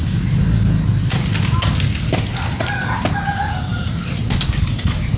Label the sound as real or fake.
real